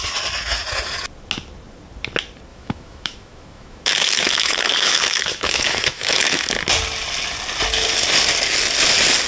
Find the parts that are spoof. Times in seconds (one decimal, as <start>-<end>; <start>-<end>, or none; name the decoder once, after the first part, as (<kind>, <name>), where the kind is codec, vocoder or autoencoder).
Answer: 2.5-6.5 (autoencoder, DAC-VAE)